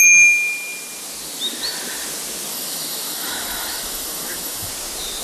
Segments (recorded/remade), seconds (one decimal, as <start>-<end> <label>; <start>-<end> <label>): 0.0-2.5 recorded; 2.5-4.7 remade; 4.7-5.2 recorded